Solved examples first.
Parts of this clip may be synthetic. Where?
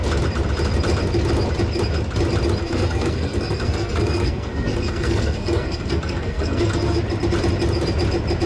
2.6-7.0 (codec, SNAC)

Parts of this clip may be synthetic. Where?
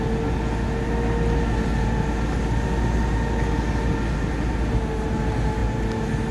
none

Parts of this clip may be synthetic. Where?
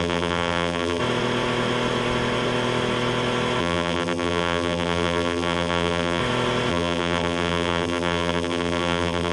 0.0-1.0 (vocoder, BigVGAN v2); 3.6-6.2; 6.7-9.3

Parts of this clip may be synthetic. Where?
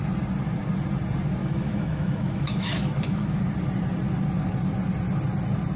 1.4-3.4 (autoencoder, DAC-VAE)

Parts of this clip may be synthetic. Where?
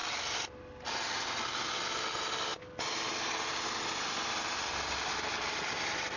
none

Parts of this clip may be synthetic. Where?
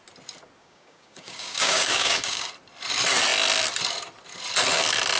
0.6-2.5 (codec, DAC)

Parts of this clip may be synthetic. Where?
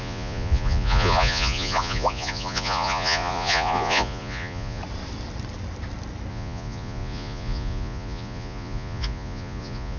0.0-4.8 (vocoder, Vocos); 6.3-10.0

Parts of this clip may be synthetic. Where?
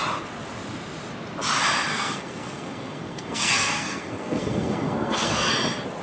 1.9-5.5 (codec, SNAC)